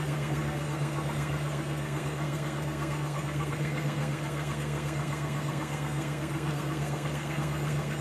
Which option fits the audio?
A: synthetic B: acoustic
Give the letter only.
A